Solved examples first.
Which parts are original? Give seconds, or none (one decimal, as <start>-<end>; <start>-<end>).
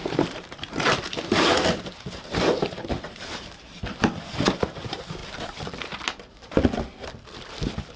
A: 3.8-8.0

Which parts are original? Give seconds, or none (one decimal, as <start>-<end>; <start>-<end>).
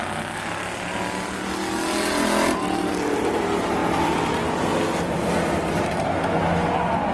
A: 0.0-7.1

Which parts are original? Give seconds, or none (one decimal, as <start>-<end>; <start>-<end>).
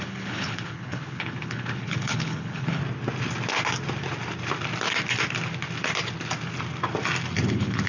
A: 2.8-7.5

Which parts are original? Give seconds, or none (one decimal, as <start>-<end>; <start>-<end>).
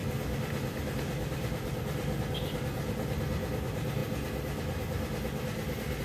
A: 0.0-6.0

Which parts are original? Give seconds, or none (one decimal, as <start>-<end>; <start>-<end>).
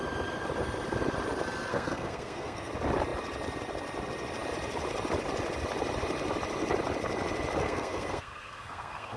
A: 0.0-1.7; 2.7-7.6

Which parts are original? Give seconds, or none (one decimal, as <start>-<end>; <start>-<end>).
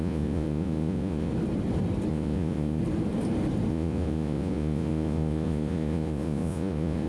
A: 1.3-2.1; 2.8-3.7